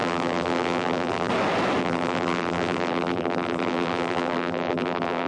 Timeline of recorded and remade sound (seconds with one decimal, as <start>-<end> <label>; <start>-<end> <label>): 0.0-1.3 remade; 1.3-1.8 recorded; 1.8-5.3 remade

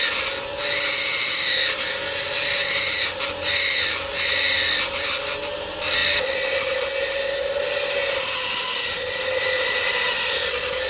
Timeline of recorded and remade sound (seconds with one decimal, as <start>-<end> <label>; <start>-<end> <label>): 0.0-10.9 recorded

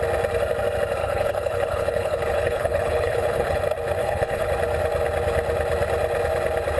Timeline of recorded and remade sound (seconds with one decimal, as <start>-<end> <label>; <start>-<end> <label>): 0.0-1.0 recorded; 1.0-3.6 remade; 3.6-4.0 recorded; 4.0-4.5 remade; 4.5-6.8 recorded

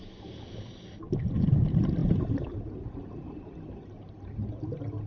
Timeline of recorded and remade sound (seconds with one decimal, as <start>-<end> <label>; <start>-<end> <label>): 0.0-5.1 recorded